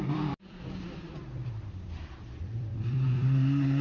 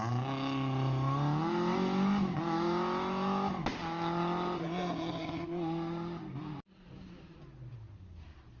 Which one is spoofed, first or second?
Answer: first